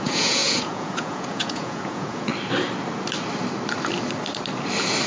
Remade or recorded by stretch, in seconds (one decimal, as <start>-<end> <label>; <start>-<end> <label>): 0.0-2.3 remade; 2.3-5.1 recorded